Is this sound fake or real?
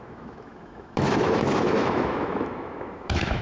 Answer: fake